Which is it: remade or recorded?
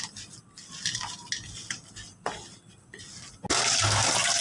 recorded